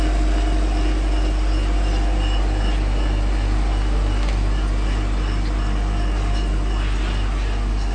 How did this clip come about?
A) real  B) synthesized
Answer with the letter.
A